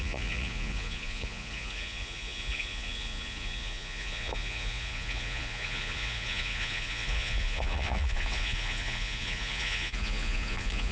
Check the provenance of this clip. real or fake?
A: fake